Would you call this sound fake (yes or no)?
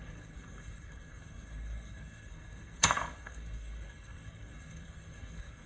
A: yes